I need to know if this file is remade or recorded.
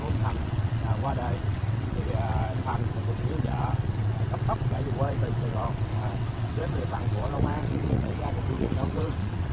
remade